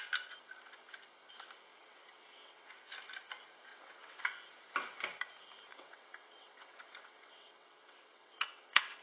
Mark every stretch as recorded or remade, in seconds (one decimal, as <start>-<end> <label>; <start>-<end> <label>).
0.0-1.7 recorded; 1.7-2.7 remade; 2.7-3.7 recorded; 3.7-4.2 remade; 4.2-5.7 recorded; 5.7-9.0 remade